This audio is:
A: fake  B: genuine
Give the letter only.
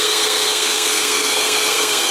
A